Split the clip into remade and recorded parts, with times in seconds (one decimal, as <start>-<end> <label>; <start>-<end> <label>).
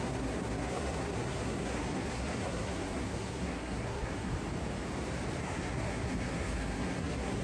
0.0-4.3 remade; 4.3-5.4 recorded; 5.4-7.4 remade